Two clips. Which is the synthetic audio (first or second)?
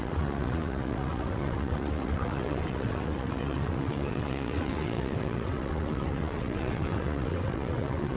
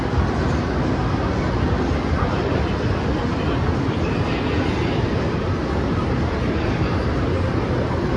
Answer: first